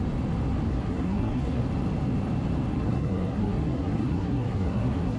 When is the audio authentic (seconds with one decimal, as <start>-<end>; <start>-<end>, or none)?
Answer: 0.0-0.7; 1.6-2.7